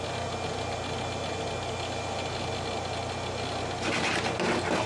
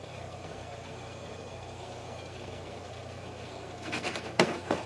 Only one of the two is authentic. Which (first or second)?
first